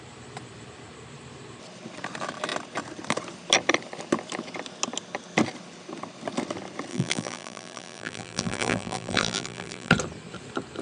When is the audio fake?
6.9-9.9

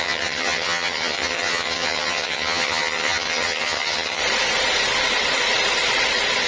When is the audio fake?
0.0-4.2

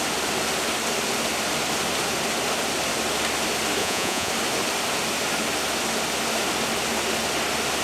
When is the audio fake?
3.8-4.3

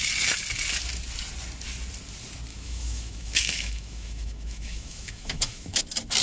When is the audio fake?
2.5-5.8

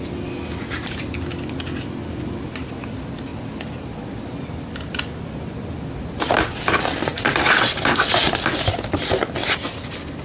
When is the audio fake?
none

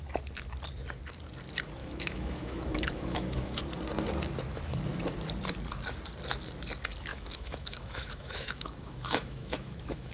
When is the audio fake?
1.8-3.6; 7.1-10.1

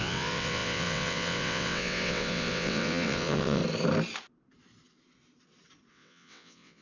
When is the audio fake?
0.0-3.6; 5.9-6.8